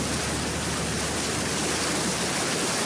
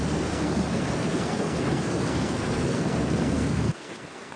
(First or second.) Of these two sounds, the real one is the first